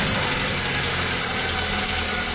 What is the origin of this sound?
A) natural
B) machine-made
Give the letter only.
A